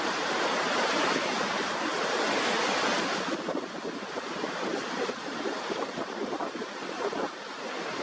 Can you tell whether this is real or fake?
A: real